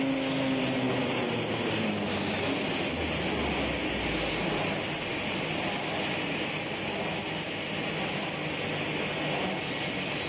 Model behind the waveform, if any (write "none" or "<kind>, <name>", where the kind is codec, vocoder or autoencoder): none